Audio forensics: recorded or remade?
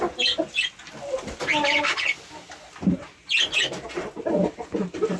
recorded